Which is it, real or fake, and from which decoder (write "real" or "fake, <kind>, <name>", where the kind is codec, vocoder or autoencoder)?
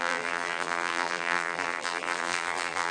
fake, vocoder, BigVGAN v2